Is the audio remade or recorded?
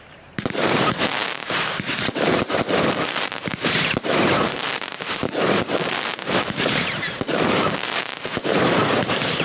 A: remade